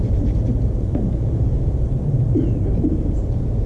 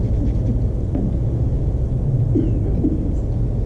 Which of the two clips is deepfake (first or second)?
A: first